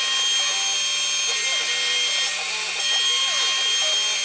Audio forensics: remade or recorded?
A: recorded